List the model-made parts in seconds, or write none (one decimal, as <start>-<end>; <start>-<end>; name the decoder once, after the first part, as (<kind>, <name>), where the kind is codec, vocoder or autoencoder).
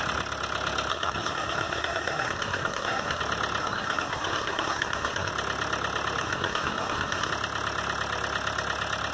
0.9-3.2 (codec, SNAC); 3.6-5.3; 6.2-7.3